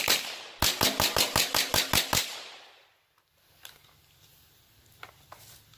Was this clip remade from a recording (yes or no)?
no